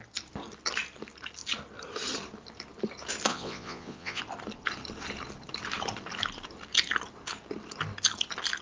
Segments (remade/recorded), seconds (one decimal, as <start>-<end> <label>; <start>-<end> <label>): 0.0-3.3 recorded; 3.3-4.2 remade; 4.2-8.6 recorded